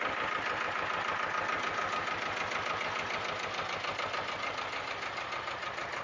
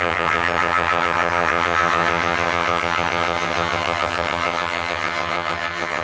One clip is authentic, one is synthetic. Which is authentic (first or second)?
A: first